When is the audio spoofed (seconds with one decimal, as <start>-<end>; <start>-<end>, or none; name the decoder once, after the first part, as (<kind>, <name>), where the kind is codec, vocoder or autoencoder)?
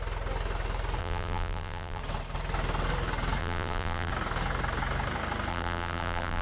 1.0-2.0 (vocoder, BigVGAN v2); 3.4-4.1; 5.5-6.4